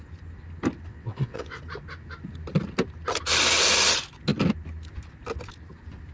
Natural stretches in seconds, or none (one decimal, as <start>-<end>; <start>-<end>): 0.0-0.9; 1.6-6.1